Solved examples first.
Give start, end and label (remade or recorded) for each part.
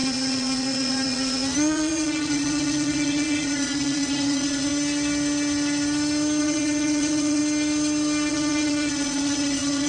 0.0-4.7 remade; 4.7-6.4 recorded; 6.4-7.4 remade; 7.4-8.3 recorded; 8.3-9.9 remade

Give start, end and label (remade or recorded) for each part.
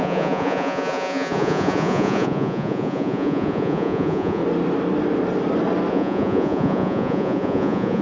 0.0-4.4 remade; 4.4-5.9 recorded; 5.9-8.0 remade